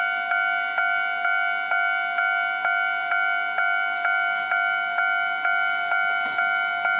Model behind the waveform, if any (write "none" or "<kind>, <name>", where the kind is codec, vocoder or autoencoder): none